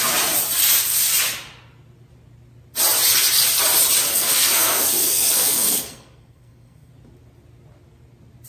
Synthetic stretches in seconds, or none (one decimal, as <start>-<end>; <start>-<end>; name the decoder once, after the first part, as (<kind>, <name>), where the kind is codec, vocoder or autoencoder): 4.1-6.9 (codec, SNAC)